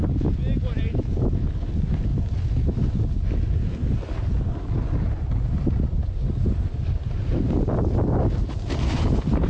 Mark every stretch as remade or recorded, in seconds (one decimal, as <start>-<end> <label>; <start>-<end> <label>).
0.0-9.5 recorded